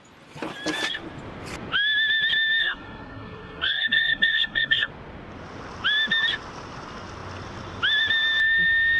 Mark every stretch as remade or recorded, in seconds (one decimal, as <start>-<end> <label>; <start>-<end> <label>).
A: 0.0-2.6 recorded; 2.6-4.9 remade; 4.9-9.0 recorded